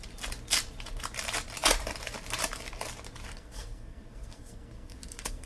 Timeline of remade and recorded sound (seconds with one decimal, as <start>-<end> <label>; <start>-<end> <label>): 0.0-3.3 recorded; 3.3-5.5 remade